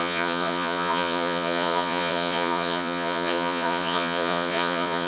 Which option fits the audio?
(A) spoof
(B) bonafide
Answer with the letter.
A